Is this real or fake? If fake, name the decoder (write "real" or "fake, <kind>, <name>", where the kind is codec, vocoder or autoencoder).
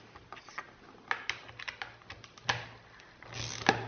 real